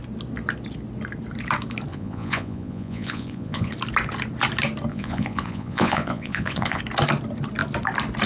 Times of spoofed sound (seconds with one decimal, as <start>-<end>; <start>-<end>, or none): 1.9-3.7; 4.9-6.8